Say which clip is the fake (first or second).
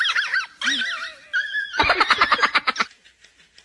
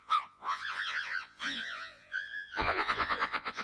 second